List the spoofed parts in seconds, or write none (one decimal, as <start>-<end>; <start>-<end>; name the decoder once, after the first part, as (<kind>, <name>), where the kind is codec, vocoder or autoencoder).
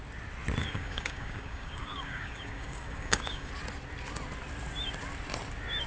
0.6-3.5 (codec, DAC)